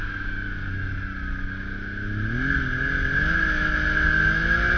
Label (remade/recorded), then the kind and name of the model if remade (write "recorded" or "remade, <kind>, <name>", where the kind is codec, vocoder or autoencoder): recorded